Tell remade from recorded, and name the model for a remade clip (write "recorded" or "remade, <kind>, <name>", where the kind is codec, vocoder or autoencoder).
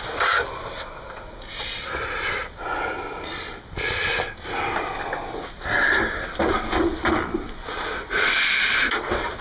recorded